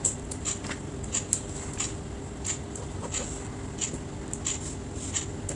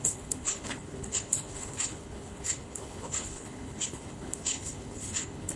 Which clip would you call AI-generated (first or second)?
second